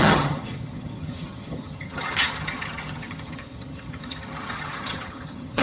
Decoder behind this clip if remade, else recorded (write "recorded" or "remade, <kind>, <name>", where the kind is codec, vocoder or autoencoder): remade, vocoder, HiFi-GAN